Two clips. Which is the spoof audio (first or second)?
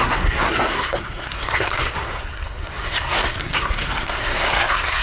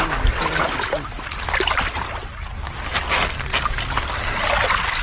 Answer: first